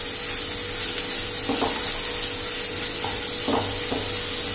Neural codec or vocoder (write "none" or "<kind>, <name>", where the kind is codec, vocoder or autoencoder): none